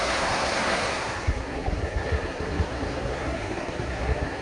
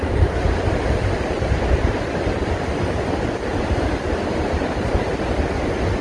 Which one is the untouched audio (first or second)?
second